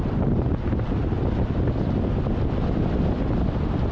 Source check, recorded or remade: recorded